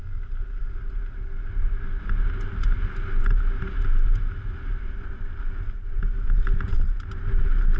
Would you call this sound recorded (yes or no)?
yes